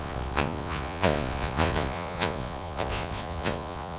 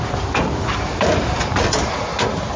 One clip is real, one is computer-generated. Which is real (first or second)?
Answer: second